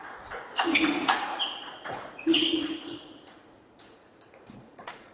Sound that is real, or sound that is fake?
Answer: fake